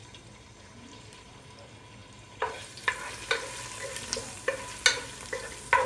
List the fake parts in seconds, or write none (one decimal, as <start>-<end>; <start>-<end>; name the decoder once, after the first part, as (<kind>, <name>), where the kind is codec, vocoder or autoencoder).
0.0-1.4 (vocoder, BigVGAN v2); 2.0-2.9